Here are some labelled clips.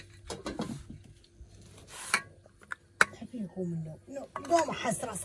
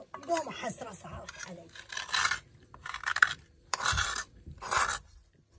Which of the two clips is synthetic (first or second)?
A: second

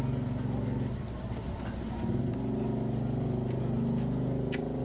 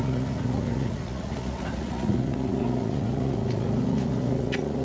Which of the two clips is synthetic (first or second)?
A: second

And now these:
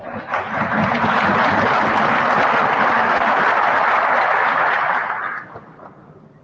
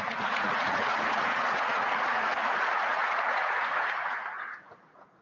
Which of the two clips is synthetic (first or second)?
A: second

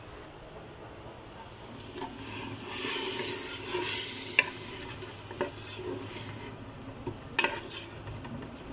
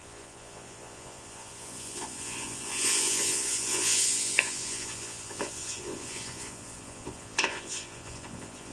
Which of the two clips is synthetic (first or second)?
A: second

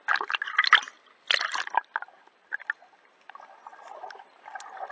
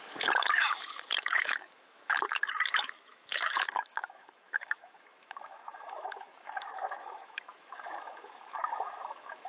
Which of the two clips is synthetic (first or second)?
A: second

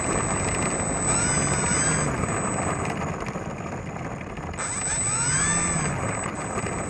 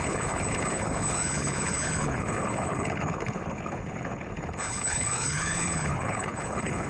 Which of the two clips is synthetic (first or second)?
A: second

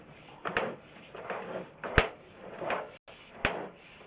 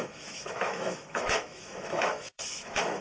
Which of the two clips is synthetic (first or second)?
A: second